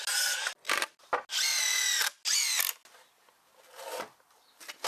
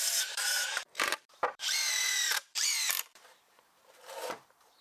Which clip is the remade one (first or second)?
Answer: second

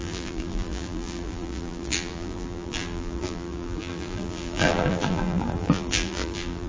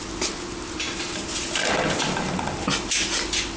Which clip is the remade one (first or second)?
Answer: first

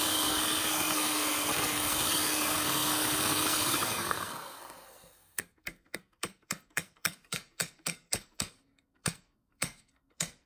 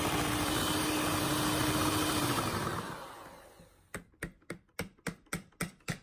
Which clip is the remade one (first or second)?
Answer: first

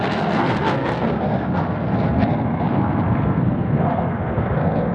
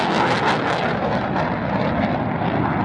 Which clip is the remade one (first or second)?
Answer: first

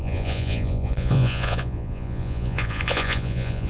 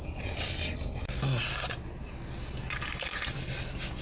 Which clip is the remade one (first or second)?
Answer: first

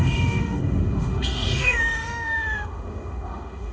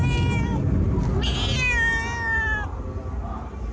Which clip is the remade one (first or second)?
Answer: first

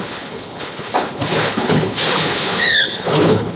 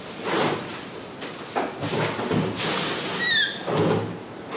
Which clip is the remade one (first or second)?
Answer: first